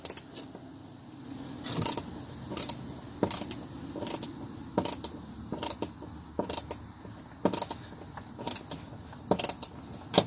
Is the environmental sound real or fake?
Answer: real